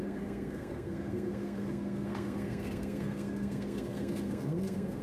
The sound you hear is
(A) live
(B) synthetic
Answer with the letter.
B